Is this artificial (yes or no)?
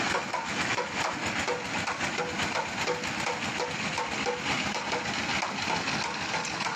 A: no